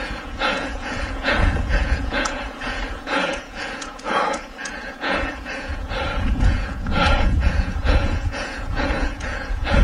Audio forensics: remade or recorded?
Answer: remade